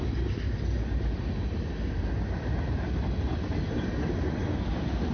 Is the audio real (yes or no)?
yes